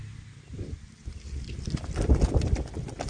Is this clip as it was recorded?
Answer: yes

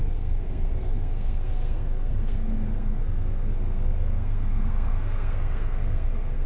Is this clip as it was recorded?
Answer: no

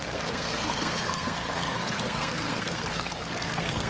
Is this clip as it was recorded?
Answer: no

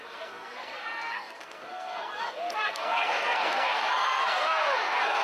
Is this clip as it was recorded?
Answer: no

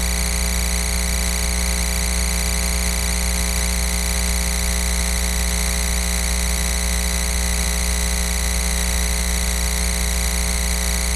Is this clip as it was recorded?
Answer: yes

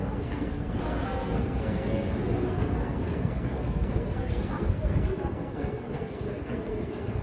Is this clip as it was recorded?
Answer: no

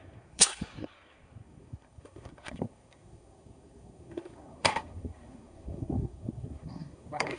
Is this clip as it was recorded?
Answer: no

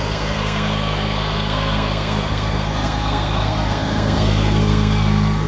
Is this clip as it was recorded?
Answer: no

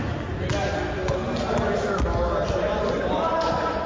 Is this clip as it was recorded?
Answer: yes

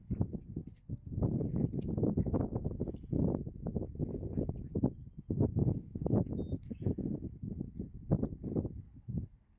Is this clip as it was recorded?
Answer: yes